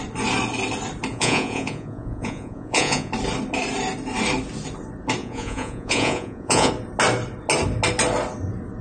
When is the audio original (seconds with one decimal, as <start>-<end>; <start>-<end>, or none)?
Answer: 0.0-1.1; 3.1-5.2; 6.7-8.8